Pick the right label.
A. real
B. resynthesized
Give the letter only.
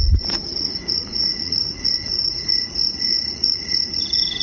B